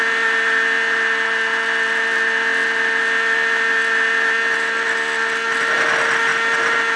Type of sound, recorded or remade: recorded